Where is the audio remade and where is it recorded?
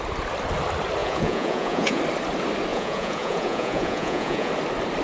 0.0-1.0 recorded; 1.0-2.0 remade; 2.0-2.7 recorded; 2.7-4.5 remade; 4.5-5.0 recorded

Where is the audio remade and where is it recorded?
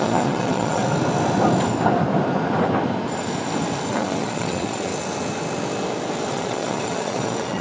0.0-0.8 remade; 0.8-3.9 recorded; 3.9-4.9 remade; 4.9-6.3 recorded; 6.3-7.6 remade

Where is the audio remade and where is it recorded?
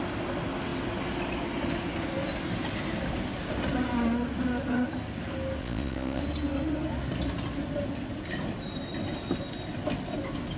0.0-5.6 recorded; 5.6-6.2 remade; 6.2-10.6 recorded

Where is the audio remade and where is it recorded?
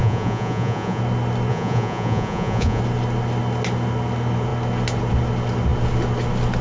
0.0-1.0 remade; 1.0-1.5 recorded; 1.5-2.8 remade; 2.8-6.6 recorded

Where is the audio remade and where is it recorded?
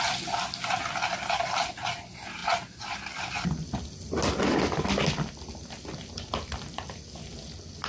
0.0-7.9 recorded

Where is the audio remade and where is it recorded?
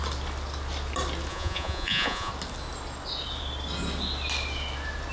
0.0-1.3 recorded; 1.3-2.3 remade; 2.3-5.1 recorded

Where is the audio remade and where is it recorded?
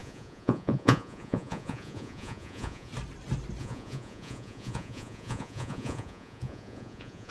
0.0-2.9 remade; 2.9-3.6 recorded; 3.6-7.3 remade